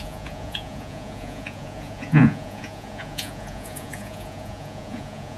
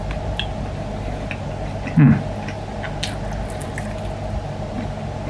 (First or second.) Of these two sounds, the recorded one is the second